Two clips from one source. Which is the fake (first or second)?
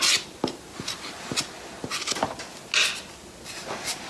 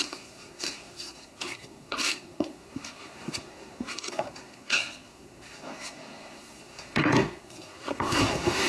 second